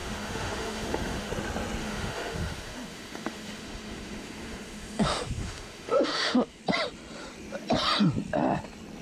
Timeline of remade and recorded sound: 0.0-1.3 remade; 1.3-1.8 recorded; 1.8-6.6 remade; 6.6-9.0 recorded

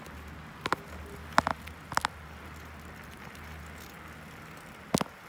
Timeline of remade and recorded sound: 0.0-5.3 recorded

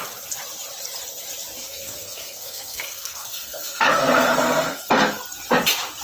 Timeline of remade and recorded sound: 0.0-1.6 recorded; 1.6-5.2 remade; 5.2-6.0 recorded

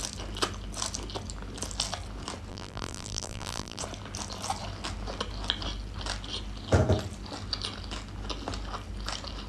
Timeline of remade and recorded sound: 0.0-2.5 recorded; 2.5-3.8 remade; 3.8-9.5 recorded